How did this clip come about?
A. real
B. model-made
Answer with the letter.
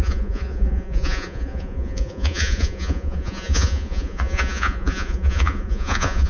B